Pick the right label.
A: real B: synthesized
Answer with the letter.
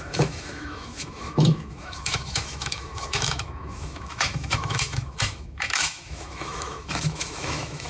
B